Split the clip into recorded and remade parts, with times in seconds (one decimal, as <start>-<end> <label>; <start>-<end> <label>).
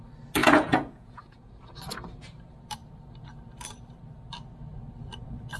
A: 0.0-0.4 recorded; 0.4-1.5 remade; 1.5-5.6 recorded